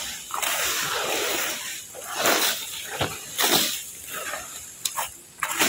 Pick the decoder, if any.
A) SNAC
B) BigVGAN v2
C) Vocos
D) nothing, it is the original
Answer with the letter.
B